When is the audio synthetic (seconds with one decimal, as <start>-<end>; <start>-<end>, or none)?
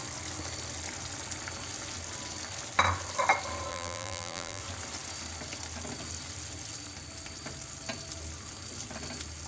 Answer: 3.7-4.6